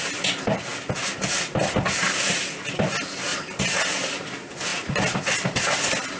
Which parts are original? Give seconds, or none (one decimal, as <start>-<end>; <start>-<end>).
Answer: 0.0-6.2